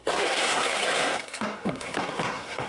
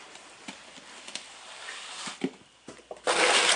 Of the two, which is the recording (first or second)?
second